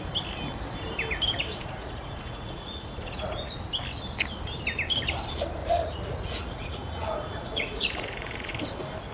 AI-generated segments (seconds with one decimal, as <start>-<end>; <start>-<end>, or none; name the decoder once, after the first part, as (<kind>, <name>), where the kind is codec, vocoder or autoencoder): 1.5-3.7 (vocoder, Vocos); 5.6-8.5